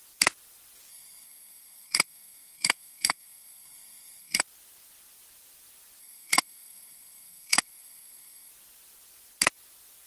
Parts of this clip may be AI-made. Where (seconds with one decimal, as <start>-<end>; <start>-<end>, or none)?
0.9-4.4; 6.0-8.5